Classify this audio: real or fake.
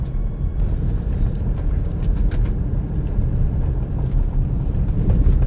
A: fake